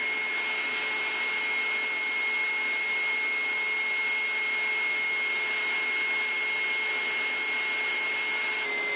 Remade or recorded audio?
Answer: recorded